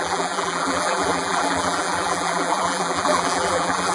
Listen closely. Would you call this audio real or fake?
fake